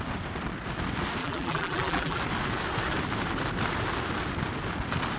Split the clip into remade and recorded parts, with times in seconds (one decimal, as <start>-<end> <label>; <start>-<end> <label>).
0.0-1.2 recorded; 1.2-2.2 remade; 2.2-5.2 recorded

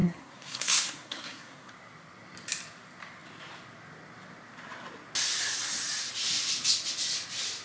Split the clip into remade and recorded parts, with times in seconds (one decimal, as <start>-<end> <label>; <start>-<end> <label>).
0.0-1.7 remade; 1.7-7.6 recorded

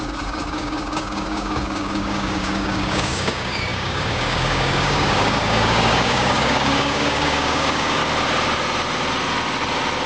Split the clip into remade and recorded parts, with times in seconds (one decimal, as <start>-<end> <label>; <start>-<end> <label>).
0.0-8.0 remade; 8.0-10.1 recorded

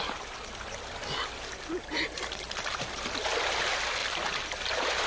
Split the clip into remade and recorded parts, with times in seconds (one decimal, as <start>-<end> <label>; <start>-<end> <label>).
0.0-5.1 recorded

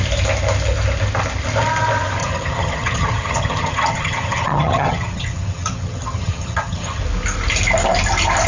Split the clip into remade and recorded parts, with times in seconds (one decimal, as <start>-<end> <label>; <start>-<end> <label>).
0.0-2.2 recorded; 2.2-7.0 remade; 7.0-8.5 recorded

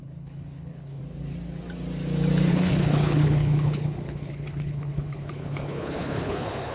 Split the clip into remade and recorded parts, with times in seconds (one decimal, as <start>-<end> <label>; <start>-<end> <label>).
0.0-1.0 remade; 1.0-2.5 recorded; 2.5-6.7 remade

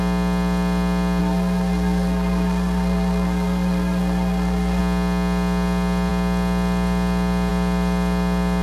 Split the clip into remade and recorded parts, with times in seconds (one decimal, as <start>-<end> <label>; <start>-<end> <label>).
0.0-1.2 recorded; 1.2-4.8 remade; 4.8-8.6 recorded

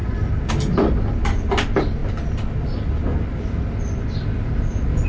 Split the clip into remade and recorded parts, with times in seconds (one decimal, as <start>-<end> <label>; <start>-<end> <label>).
0.0-5.1 recorded